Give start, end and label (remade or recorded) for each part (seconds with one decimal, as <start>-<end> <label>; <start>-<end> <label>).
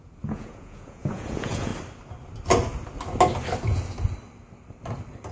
0.0-1.7 remade; 1.7-5.3 recorded